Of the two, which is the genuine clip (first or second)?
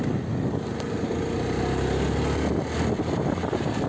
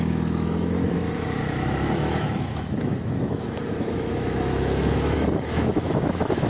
first